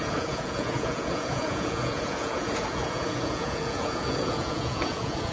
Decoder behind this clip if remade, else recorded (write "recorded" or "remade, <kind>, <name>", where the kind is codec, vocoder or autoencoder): remade, vocoder, Vocos